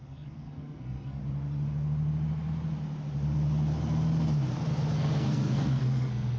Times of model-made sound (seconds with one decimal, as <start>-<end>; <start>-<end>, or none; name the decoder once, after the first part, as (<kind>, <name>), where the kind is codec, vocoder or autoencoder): 0.0-1.2 (codec, SNAC); 4.9-6.4